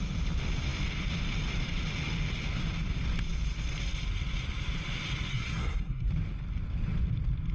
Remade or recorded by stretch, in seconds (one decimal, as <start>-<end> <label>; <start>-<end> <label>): 0.0-5.3 recorded; 5.3-6.1 remade; 6.1-7.5 recorded